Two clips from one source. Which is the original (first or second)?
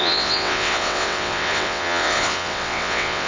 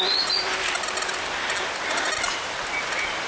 second